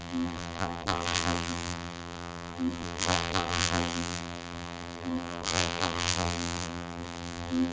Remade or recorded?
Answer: remade